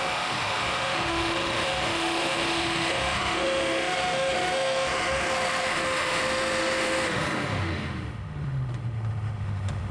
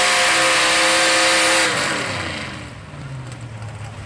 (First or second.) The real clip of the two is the second